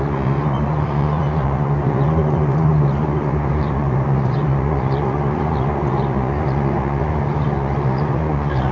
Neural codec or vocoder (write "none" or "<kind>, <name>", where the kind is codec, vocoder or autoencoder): vocoder, Vocos